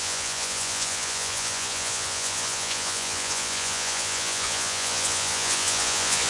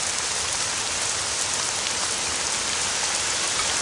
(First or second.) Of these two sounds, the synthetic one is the first